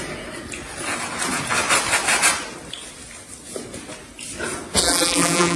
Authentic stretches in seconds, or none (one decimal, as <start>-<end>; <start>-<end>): 0.0-4.8